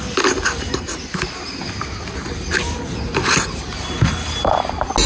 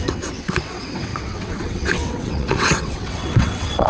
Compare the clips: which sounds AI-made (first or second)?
second